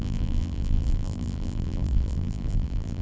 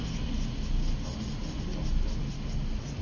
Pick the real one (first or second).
second